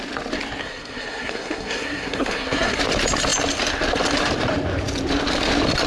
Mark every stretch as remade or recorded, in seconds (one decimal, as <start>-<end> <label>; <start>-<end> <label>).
0.0-0.6 recorded; 0.6-2.8 remade; 2.8-5.9 recorded